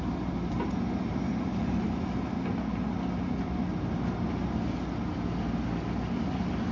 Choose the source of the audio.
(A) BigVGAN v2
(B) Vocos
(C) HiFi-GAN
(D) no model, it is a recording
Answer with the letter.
D